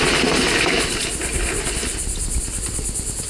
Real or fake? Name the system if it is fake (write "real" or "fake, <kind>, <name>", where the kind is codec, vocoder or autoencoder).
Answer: real